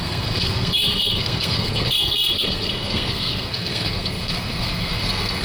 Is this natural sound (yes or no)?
no